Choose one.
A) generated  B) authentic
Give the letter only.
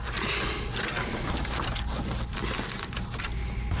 B